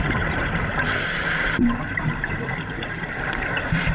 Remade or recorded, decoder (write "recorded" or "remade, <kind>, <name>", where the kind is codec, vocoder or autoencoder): remade, vocoder, BigVGAN v2